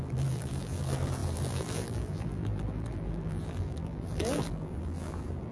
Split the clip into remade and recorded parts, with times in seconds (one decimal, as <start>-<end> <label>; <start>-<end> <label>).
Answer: 0.0-5.5 remade

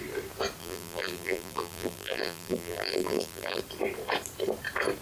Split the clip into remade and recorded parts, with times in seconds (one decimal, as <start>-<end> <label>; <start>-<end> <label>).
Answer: 0.0-0.6 recorded; 0.6-3.6 remade; 3.6-5.0 recorded

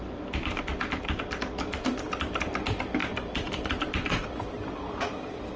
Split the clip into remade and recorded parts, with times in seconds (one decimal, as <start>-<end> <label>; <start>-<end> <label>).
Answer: 0.0-5.6 remade